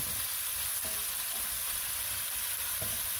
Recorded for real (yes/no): yes